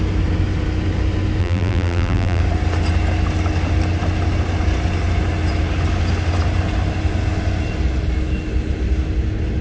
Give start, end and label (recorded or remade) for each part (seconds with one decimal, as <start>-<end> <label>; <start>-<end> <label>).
0.0-1.4 recorded; 1.4-2.4 remade; 2.4-9.6 recorded